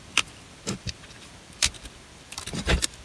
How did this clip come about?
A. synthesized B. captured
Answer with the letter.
A